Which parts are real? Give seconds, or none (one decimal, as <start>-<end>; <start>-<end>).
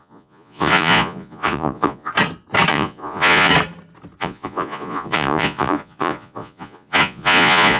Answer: 2.1-2.7; 3.5-4.2